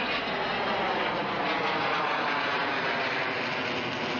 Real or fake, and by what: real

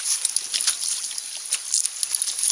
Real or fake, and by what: real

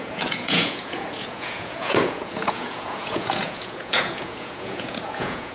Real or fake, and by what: fake, vocoder, Vocos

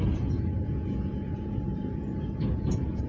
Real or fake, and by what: fake, vocoder, Vocos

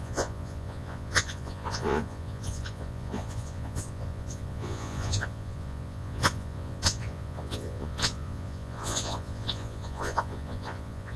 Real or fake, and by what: fake, vocoder, Vocos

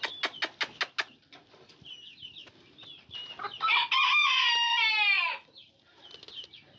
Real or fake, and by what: real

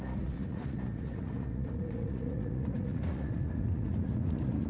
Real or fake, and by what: fake, vocoder, Vocos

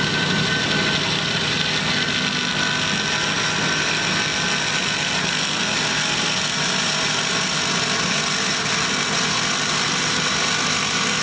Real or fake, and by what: real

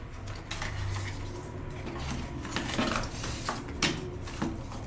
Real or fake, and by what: real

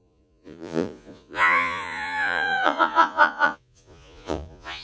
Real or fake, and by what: fake, vocoder, Vocos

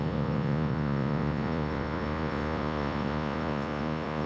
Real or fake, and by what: fake, vocoder, Vocos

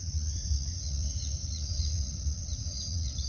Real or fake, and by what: fake, vocoder, Vocos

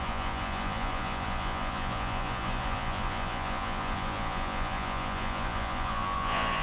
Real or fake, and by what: fake, vocoder, Vocos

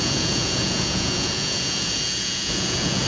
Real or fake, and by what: fake, vocoder, Vocos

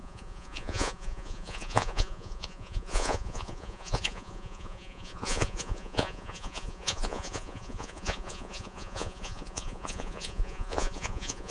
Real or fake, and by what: fake, vocoder, Vocos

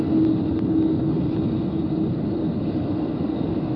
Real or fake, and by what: real